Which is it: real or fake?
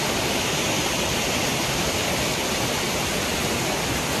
fake